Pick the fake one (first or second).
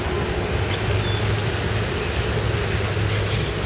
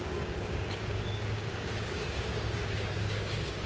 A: second